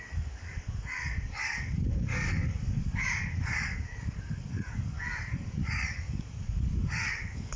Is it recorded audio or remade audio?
remade